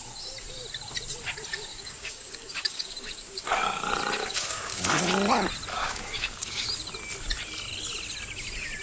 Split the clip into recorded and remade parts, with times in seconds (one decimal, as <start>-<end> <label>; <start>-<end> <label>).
0.0-1.7 recorded; 1.7-3.5 remade; 3.5-4.2 recorded; 4.2-4.9 remade; 4.9-5.7 recorded; 5.7-6.7 remade; 6.7-8.8 recorded